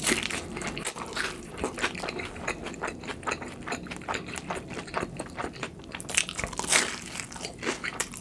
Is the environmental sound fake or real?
fake